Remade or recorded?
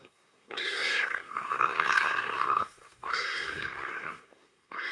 remade